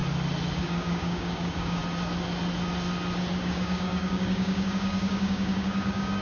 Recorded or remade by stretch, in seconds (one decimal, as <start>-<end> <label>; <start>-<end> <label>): 0.0-0.6 recorded; 0.6-1.8 remade; 1.8-3.4 recorded; 3.4-6.2 remade